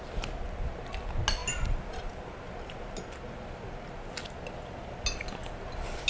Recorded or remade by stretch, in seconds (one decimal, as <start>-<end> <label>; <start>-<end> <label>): 0.0-6.1 recorded

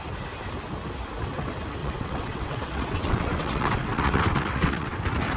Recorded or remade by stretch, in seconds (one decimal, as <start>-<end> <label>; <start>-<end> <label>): 0.0-1.8 recorded; 1.8-5.0 remade; 5.0-5.4 recorded

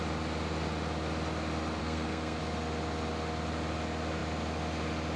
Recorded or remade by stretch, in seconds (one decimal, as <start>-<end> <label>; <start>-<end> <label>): 0.0-1.8 recorded; 1.8-2.4 remade; 2.4-5.2 recorded

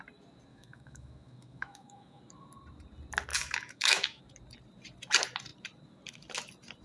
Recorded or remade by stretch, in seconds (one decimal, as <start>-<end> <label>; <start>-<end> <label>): 0.0-0.5 recorded; 0.5-2.2 remade; 2.2-3.3 recorded; 3.3-4.2 remade; 4.2-6.8 recorded

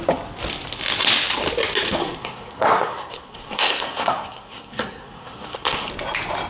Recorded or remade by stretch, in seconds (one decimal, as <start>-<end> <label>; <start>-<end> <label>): 0.0-2.0 recorded; 2.0-5.9 remade; 5.9-6.5 recorded

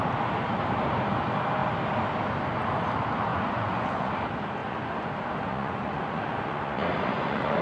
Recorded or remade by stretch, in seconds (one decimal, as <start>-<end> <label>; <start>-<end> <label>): 0.0-3.3 recorded; 3.3-4.1 remade; 4.1-4.6 recorded; 4.6-5.1 remade; 5.1-5.5 recorded; 5.5-7.6 remade

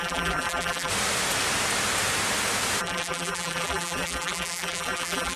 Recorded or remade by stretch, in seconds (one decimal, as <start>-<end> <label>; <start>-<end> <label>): 0.0-0.9 remade; 0.9-2.8 recorded; 2.8-5.4 remade